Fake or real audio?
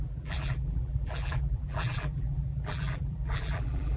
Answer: fake